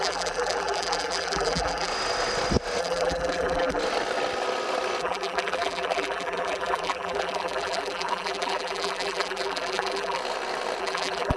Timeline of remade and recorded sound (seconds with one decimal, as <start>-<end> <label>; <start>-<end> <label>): 0.0-1.9 remade; 1.9-2.8 recorded; 2.8-3.8 remade; 3.8-5.0 recorded; 5.0-10.2 remade; 10.2-10.8 recorded; 10.8-11.4 remade

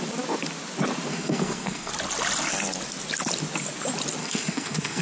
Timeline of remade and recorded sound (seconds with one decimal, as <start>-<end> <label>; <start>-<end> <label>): 0.0-1.1 recorded; 1.1-1.9 remade; 1.9-4.2 recorded; 4.2-5.0 remade

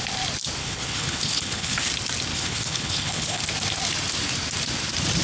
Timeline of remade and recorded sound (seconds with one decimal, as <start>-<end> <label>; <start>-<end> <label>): 0.0-0.6 recorded; 0.6-1.9 remade; 1.9-2.3 recorded; 2.3-3.4 remade; 3.4-5.2 recorded

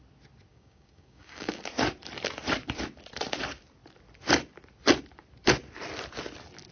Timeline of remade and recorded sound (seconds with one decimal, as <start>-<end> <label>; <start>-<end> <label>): 0.0-0.5 recorded; 0.5-1.6 remade; 1.6-6.7 recorded

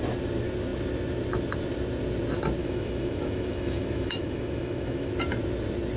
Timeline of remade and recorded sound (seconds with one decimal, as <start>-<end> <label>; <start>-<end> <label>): 0.0-2.6 recorded; 2.6-5.1 remade; 5.1-6.0 recorded

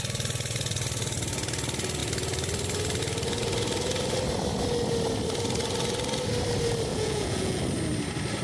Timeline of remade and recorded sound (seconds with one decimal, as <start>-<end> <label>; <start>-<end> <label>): 0.0-6.9 recorded; 6.9-7.6 remade; 7.6-8.4 recorded

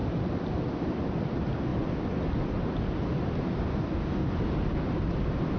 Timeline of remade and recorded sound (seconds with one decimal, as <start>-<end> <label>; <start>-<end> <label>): 0.0-3.7 recorded; 3.7-4.3 remade; 4.3-5.6 recorded

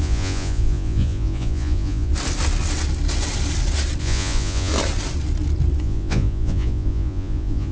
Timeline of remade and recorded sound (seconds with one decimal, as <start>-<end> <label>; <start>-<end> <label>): 0.0-2.1 remade; 2.1-4.0 recorded; 4.0-4.7 remade; 4.7-5.8 recorded; 5.8-7.7 remade